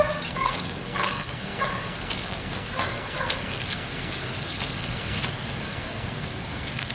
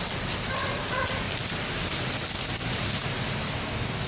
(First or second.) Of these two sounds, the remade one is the first